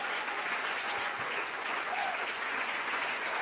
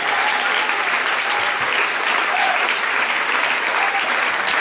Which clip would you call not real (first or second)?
first